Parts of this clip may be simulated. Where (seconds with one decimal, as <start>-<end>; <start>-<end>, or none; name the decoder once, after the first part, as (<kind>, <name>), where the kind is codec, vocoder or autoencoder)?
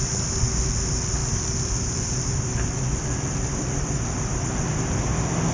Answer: 1.2-4.5 (vocoder, BigVGAN v2)